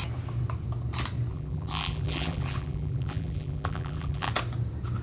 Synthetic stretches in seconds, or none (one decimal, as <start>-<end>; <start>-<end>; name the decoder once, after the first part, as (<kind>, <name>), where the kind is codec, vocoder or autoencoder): 1.3-4.3 (vocoder, BigVGAN v2)